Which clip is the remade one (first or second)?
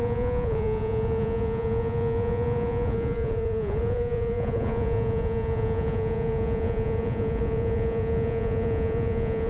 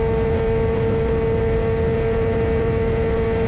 first